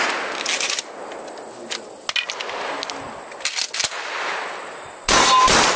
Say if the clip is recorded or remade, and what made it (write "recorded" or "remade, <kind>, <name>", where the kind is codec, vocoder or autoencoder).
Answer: recorded